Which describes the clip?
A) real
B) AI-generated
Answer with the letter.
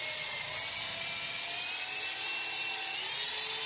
A